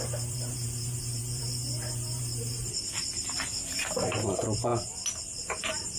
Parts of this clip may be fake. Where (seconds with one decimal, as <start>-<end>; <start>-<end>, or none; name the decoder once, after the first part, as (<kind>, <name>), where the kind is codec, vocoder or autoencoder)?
0.0-4.7 (vocoder, BigVGAN v2); 5.6-6.0